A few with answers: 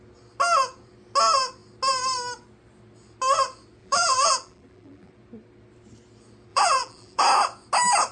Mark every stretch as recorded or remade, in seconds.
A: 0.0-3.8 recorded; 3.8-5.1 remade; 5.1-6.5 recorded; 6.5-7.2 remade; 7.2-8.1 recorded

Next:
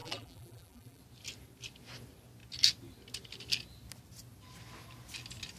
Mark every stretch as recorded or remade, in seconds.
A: 0.0-1.0 remade; 1.0-5.6 recorded